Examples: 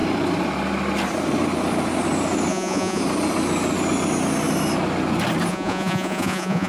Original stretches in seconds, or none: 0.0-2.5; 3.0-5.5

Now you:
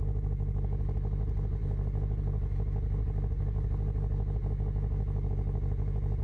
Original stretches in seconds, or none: 0.0-6.2